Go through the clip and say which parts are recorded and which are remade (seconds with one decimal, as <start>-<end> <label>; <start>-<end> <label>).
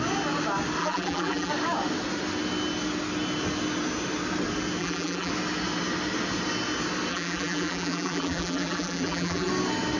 0.0-0.8 recorded; 0.8-1.5 remade; 1.5-4.8 recorded; 4.8-5.3 remade; 5.3-7.1 recorded; 7.1-9.5 remade; 9.5-10.0 recorded